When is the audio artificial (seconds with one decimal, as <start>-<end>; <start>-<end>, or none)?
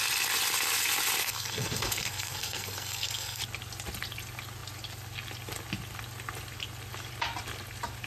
1.2-3.4